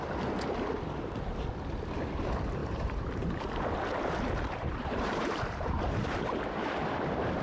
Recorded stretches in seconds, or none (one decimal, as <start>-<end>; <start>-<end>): 0.0-2.6; 6.7-7.4